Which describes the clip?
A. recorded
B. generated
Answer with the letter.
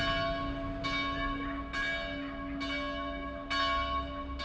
A